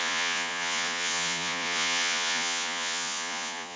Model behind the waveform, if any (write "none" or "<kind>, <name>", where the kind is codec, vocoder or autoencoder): vocoder, Vocos